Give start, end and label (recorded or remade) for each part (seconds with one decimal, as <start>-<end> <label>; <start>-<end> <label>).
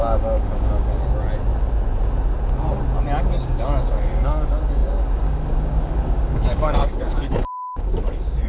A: 0.0-1.0 remade; 1.0-3.2 recorded; 3.2-8.5 remade